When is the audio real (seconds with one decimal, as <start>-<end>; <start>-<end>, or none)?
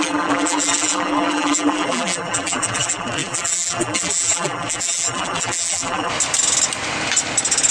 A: 6.1-7.7